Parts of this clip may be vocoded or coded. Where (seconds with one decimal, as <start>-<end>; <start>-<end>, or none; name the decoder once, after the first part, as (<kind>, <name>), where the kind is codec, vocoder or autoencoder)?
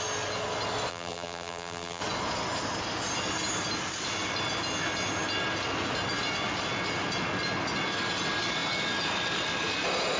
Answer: 0.9-2.0 (vocoder, BigVGAN v2)